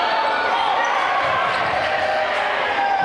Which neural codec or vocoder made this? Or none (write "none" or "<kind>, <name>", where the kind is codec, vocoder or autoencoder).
none